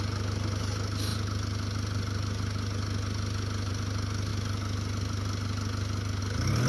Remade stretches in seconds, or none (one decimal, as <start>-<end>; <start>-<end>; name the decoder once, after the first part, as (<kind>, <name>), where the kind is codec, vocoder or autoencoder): none